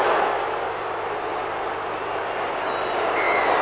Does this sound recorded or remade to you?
recorded